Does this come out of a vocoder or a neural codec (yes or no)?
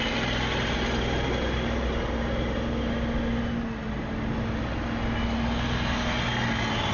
no